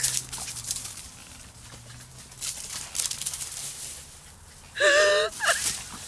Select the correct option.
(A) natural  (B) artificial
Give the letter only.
A